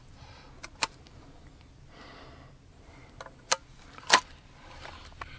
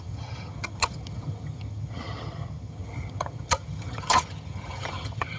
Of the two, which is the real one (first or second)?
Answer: first